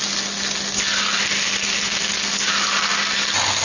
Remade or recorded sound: recorded